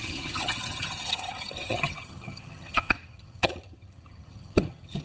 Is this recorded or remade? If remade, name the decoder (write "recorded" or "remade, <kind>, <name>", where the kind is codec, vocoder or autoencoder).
remade, vocoder, HiFi-GAN